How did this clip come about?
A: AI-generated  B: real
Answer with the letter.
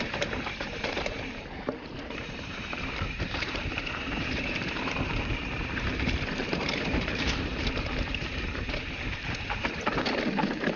A